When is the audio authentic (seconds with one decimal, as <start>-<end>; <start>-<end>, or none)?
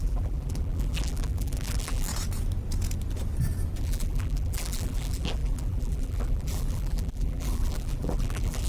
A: 2.1-3.8